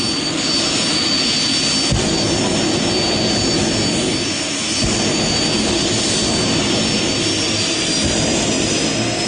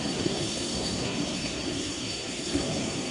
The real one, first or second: first